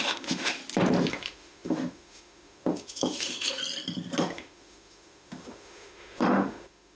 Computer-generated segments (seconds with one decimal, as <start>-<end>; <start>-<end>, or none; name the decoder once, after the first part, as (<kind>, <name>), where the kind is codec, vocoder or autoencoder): 0.0-0.6 (autoencoder, DAC-VAE); 1.1-3.6; 4.2-7.0